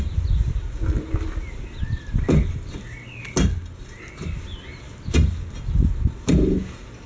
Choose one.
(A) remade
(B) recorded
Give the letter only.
B